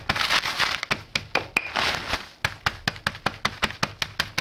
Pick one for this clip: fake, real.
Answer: real